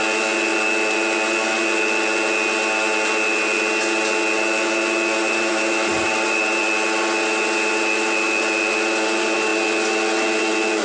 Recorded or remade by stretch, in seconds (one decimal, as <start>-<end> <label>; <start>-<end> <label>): 0.0-5.9 recorded; 5.9-6.4 remade; 6.4-10.8 recorded